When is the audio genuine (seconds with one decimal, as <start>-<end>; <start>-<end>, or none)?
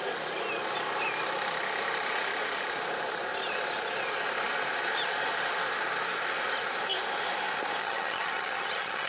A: 0.0-7.8